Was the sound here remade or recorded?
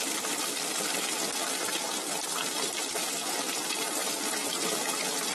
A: recorded